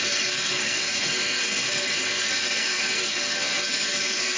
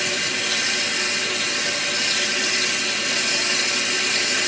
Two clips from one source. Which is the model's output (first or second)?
first